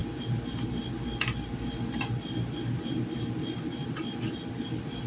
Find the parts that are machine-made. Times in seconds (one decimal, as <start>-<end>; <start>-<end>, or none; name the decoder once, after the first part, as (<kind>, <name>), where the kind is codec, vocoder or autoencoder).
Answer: none